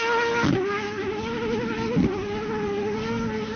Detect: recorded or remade recorded